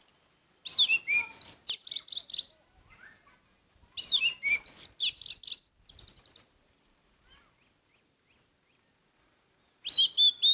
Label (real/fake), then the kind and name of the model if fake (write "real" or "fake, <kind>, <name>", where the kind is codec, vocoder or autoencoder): real